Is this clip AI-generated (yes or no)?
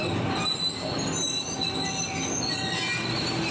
no